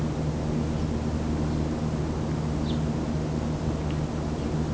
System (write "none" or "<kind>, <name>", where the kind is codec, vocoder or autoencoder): none